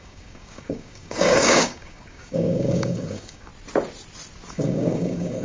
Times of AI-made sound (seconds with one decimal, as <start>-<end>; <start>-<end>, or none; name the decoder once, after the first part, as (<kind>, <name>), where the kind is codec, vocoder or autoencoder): 0.0-3.5 (codec, DAC); 4.5-5.4